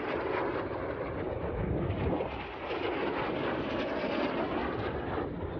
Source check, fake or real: real